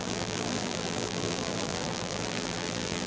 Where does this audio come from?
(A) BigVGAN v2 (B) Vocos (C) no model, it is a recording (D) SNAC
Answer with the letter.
A